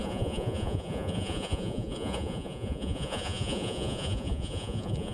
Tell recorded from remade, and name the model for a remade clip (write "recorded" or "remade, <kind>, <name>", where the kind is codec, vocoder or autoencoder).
remade, vocoder, Vocos